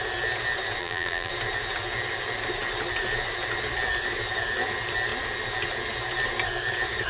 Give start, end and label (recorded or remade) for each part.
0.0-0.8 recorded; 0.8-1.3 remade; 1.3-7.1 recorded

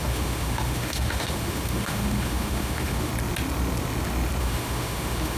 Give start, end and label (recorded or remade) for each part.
0.0-3.1 remade; 3.1-4.4 recorded; 4.4-5.4 remade

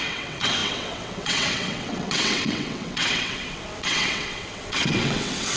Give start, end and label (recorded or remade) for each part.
0.0-5.6 remade

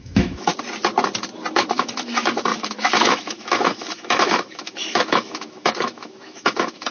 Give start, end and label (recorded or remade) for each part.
0.0-0.5 remade; 0.5-1.5 recorded; 1.5-6.9 remade

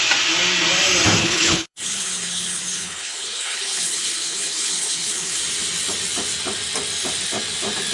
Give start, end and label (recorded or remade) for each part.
0.0-1.2 recorded; 1.2-5.4 remade; 5.4-7.9 recorded

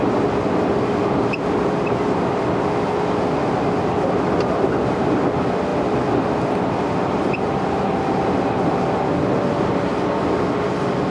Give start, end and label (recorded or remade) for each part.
0.0-11.1 recorded

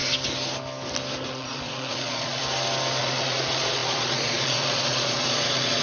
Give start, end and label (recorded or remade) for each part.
0.0-1.3 recorded; 1.3-2.4 remade; 2.4-3.0 recorded; 3.0-5.8 remade

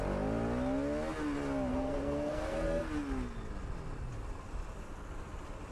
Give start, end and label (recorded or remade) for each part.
0.0-1.7 recorded; 1.7-2.9 remade; 2.9-5.7 recorded